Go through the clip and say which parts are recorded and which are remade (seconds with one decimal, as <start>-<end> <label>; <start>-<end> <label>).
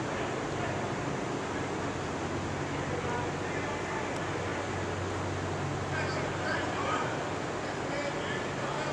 0.0-8.9 recorded